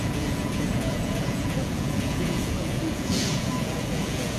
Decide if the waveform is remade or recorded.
remade